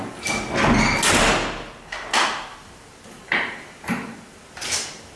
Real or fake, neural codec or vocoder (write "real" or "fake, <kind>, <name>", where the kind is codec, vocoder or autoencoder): real